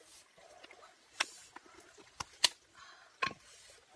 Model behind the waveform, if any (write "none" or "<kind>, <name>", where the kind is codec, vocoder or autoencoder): none